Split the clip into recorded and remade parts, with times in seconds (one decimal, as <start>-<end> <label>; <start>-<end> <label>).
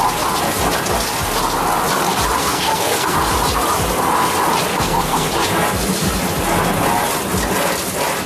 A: 0.0-2.4 recorded; 2.4-3.3 remade; 3.3-4.7 recorded; 4.7-5.3 remade; 5.3-8.3 recorded